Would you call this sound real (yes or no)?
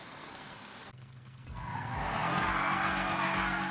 no